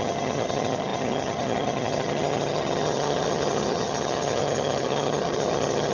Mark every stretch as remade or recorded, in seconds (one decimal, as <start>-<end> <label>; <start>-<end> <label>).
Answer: 0.0-5.9 remade